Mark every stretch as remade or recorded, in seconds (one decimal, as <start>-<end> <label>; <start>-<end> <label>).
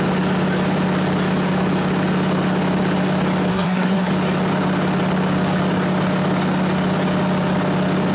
0.0-3.5 recorded; 3.5-4.1 remade; 4.1-8.1 recorded